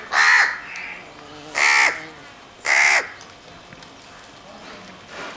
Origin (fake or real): real